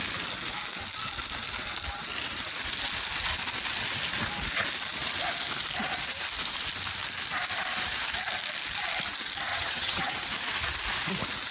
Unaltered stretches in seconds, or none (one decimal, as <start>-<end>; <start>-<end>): 0.0-9.5; 10.1-11.5